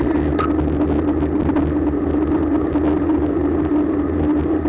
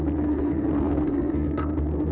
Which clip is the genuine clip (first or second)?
first